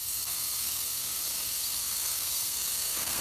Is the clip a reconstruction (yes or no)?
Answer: yes